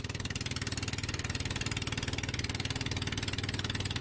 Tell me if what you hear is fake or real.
real